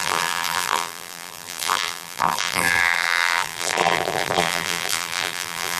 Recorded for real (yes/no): no